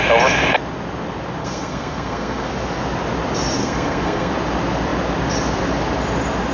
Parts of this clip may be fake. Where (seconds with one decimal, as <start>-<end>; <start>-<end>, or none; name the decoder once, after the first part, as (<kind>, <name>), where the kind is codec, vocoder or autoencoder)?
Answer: 1.4-2.5 (codec, SNAC); 3.6-4.3